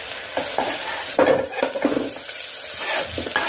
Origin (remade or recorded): recorded